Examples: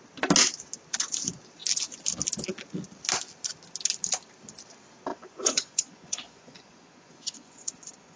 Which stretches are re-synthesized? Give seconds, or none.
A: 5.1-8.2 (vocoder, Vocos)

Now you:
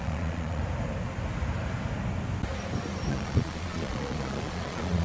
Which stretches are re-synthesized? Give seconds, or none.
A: 0.0-0.6 (vocoder, Vocos); 3.1-5.0

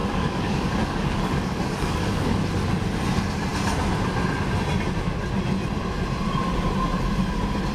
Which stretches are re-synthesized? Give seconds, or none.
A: 0.0-2.4 (codec, DAC)

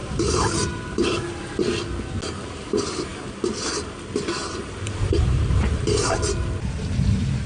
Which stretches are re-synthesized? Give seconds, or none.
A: 0.0-1.3 (vocoder, BigVGAN v2); 4.6-5.8